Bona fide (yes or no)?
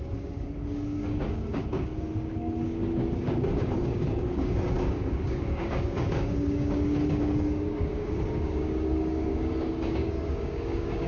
no